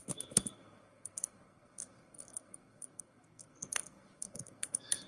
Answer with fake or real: fake